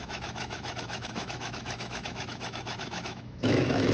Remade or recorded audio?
remade